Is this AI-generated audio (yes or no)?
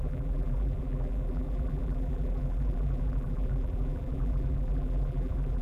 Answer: yes